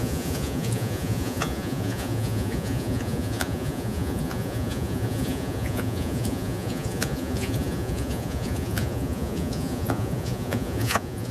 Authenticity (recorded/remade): remade